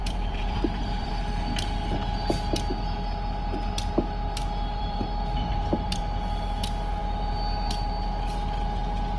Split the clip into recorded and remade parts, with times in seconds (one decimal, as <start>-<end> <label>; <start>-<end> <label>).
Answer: 0.0-1.1 remade; 1.1-4.4 recorded; 4.4-6.0 remade; 6.0-9.2 recorded